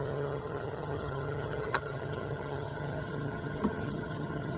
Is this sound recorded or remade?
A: remade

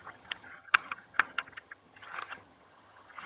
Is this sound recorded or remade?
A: remade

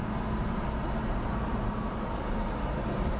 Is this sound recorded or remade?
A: recorded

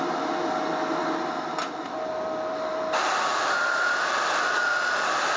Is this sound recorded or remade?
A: recorded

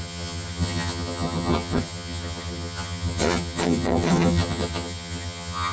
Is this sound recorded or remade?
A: remade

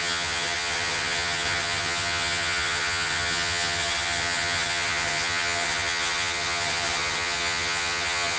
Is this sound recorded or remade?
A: remade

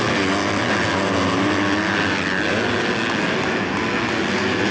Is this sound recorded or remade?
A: recorded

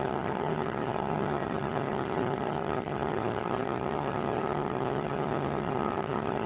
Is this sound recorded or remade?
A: remade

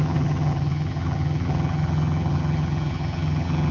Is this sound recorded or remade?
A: remade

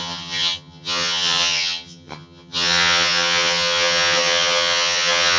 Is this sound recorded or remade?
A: remade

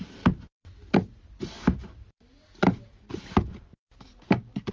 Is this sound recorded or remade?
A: recorded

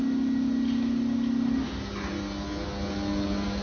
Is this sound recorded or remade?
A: recorded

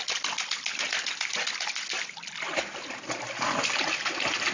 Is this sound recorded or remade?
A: recorded